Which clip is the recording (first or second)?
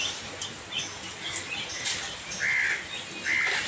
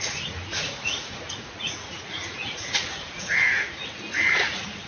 first